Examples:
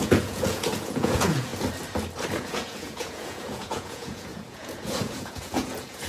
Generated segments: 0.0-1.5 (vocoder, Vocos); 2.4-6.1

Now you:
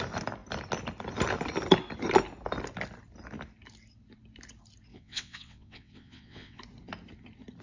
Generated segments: 4.9-6.6 (vocoder, WaveNeXt)

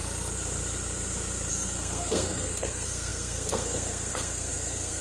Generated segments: 1.5-5.0 (codec, SNAC)

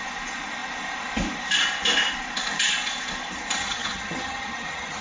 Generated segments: 3.6-5.0 (vocoder, HiFi-GAN)

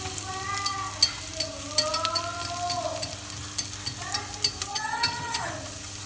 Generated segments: 4.7-5.5 (vocoder, HiFi-GAN)

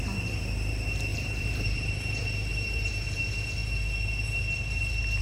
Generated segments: 1.1-2.1 (vocoder, BigVGAN v2); 2.5-3.2

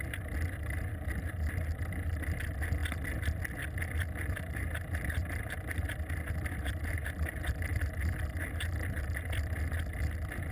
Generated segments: none

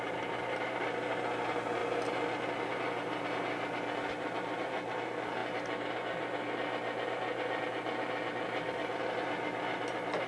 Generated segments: none